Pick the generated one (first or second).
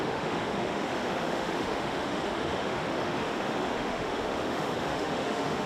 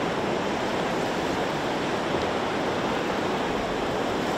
first